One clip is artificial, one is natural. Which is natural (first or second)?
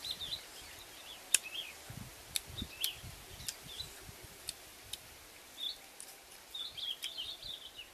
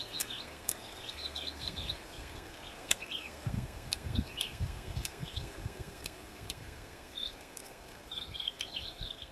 first